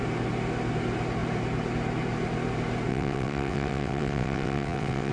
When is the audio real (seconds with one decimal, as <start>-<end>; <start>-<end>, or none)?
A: 0.0-2.9